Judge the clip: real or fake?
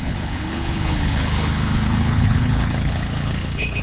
fake